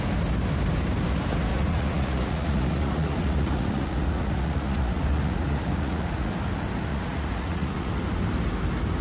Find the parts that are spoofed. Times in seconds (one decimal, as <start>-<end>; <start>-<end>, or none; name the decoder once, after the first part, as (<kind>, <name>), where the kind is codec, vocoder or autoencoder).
1.5-6.3 (vocoder, Vocos); 6.9-7.9